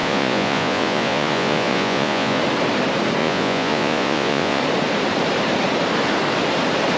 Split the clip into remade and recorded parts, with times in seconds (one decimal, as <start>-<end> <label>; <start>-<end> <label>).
0.0-2.4 remade; 2.4-3.2 recorded; 3.2-4.6 remade; 4.6-7.0 recorded